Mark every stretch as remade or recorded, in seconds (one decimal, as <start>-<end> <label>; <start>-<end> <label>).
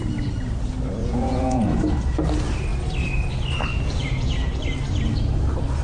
0.0-1.0 recorded; 1.0-1.8 remade; 1.8-3.7 recorded; 3.7-4.6 remade; 4.6-5.8 recorded